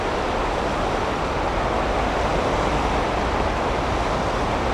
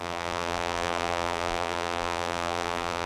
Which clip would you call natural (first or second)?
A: first